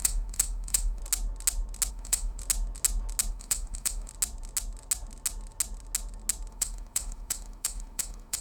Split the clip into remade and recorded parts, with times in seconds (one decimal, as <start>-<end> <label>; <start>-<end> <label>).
0.0-1.0 remade; 1.0-1.9 recorded; 1.9-2.4 remade; 2.4-3.3 recorded; 3.3-4.1 remade; 4.1-6.5 recorded; 6.5-8.4 remade